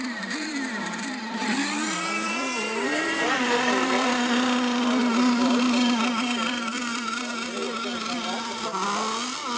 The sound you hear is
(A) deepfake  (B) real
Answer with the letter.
A